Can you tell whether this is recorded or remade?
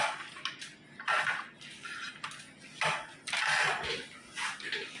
recorded